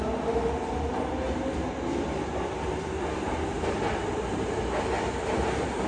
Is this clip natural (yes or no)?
yes